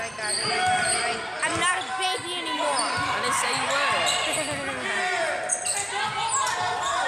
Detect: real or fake real